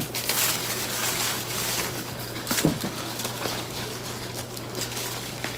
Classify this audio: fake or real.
fake